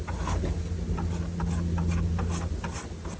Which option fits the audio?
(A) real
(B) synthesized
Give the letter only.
A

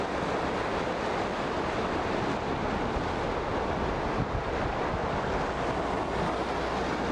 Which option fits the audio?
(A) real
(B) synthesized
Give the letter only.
A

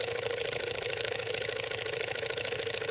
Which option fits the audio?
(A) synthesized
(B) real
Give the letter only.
A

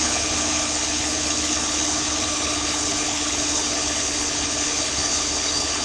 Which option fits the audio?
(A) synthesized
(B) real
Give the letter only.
A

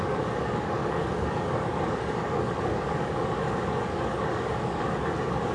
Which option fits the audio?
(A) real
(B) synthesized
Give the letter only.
B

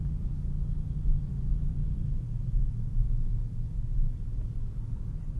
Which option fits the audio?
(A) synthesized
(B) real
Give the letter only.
A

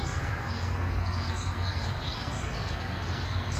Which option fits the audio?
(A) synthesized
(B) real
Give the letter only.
A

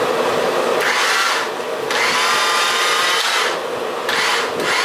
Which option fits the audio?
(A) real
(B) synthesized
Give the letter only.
A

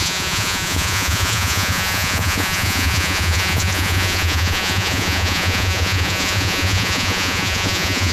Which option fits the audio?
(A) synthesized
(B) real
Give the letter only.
A